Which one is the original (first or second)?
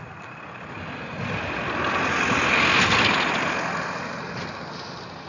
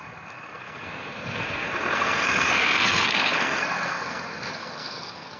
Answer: first